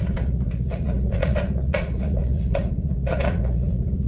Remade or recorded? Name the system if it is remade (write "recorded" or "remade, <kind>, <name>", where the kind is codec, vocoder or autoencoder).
remade, vocoder, Vocos